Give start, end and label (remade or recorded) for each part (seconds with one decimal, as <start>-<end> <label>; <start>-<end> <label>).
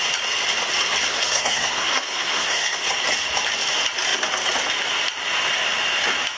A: 0.0-1.1 recorded; 1.1-2.9 remade; 2.9-6.4 recorded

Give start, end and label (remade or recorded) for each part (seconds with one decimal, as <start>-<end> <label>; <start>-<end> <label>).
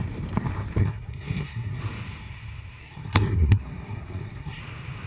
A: 0.0-0.8 recorded; 0.8-1.8 remade; 1.8-2.8 recorded; 2.8-4.6 remade; 4.6-5.1 recorded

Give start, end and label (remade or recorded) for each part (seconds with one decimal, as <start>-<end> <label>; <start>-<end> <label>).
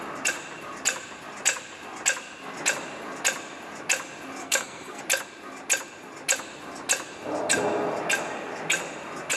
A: 0.0-4.4 recorded; 4.4-5.0 remade; 5.0-9.4 recorded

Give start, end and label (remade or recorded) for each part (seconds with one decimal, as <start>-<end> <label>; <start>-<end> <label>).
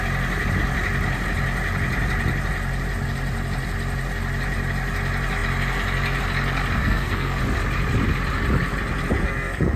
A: 0.0-6.8 recorded; 6.8-7.4 remade; 7.4-9.2 recorded; 9.2-9.8 remade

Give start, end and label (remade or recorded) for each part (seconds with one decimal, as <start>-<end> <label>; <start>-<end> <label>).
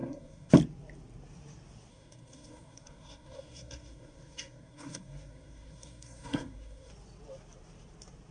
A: 0.0-0.5 remade; 0.5-1.9 recorded; 1.9-6.9 remade; 6.9-8.3 recorded